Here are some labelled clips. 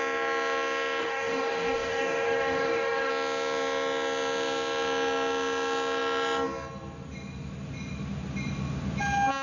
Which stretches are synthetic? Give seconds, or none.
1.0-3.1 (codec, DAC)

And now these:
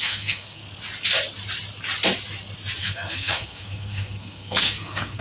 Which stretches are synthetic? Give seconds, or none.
0.0-0.6 (codec, SNAC); 2.8-5.2

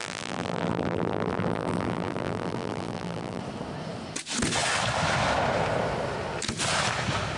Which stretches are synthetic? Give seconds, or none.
0.0-3.4 (vocoder, BigVGAN v2)

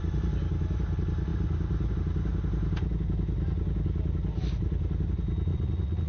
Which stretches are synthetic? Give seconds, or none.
5.5-6.1 (vocoder, Vocos)

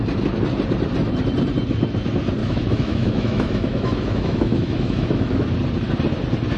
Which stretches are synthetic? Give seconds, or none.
2.4-5.5 (autoencoder, DAC-VAE)